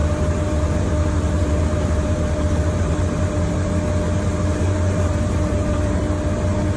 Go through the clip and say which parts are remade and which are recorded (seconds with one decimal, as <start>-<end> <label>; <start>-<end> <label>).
0.0-3.7 remade; 3.7-4.5 recorded; 4.5-6.0 remade; 6.0-6.8 recorded